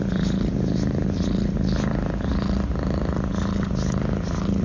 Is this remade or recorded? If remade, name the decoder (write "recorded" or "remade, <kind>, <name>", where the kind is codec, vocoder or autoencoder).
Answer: recorded